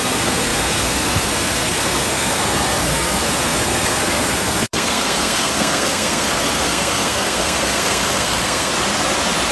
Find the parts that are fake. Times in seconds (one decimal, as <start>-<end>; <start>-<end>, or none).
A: 0.0-8.7